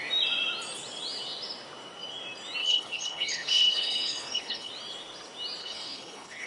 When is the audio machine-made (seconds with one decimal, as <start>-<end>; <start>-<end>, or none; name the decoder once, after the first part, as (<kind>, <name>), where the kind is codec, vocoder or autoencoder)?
2.6-4.7 (codec, HILCodec); 5.6-6.5